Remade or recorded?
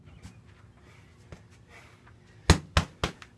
recorded